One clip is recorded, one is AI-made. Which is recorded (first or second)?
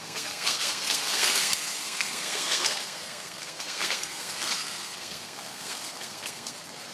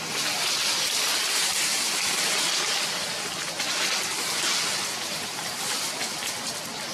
second